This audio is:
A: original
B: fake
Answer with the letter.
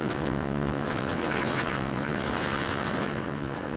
B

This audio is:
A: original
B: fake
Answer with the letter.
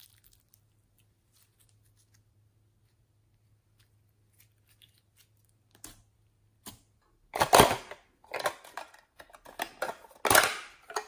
A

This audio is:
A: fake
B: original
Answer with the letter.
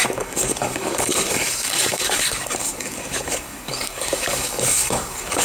A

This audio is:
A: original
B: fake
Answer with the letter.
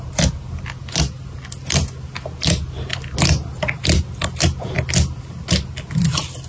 A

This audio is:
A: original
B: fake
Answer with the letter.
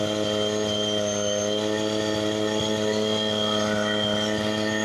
A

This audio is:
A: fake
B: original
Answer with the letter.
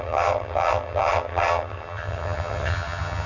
A